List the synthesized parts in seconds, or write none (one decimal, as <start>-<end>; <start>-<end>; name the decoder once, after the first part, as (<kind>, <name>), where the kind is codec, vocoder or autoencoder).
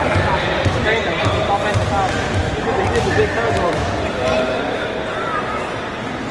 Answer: 1.0-1.5 (vocoder, BigVGAN v2)